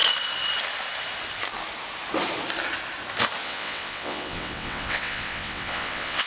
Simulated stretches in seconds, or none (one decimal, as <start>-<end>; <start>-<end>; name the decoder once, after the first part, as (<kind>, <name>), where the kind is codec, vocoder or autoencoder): 3.4-6.3 (vocoder, WaveNeXt)